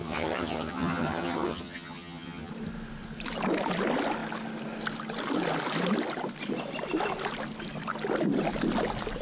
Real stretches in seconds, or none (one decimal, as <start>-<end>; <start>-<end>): 2.5-9.2